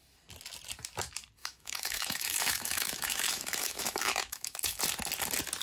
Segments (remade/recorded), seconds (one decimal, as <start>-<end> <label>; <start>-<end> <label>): 0.0-1.4 recorded; 1.4-4.8 remade; 4.8-5.6 recorded